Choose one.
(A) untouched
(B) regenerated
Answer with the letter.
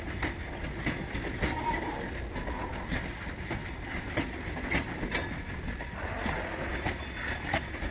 A